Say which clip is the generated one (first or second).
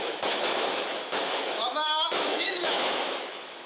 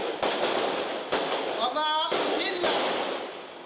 first